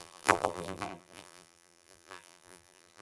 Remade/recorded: remade